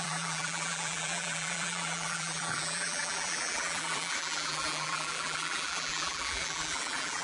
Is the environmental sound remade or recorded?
remade